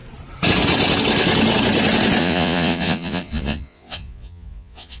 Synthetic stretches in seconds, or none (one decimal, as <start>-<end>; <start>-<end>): 2.2-5.0